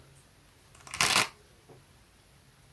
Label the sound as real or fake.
real